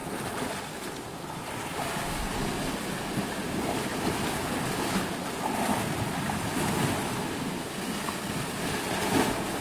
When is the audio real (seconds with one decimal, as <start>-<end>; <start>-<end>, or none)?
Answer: 0.9-3.9; 7.0-9.6